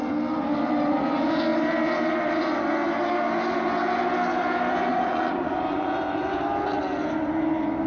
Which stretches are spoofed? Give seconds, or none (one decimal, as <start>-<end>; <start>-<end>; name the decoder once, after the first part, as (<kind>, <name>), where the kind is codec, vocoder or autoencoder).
4.9-6.4 (vocoder, Vocos)